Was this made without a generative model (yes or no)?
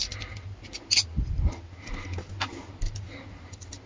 yes